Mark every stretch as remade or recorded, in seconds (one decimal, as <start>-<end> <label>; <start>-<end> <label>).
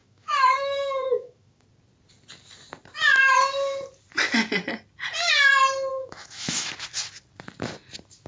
0.0-1.6 remade; 1.6-5.9 recorded; 5.9-6.7 remade; 6.7-8.3 recorded